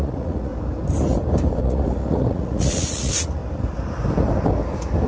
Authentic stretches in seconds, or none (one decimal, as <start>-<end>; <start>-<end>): 0.5-1.6; 3.4-5.1